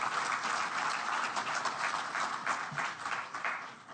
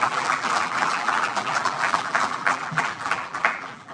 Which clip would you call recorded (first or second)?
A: first